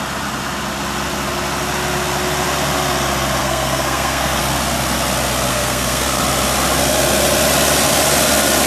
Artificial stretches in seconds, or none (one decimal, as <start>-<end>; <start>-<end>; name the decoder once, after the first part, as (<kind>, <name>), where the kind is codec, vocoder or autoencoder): 3.4-4.4 (codec, SNAC); 5.5-6.2